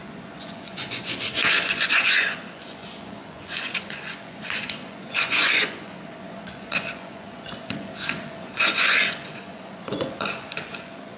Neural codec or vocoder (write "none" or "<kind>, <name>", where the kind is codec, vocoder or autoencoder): vocoder, Vocos